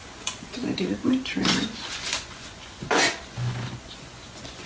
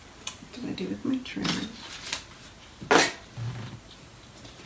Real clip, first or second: second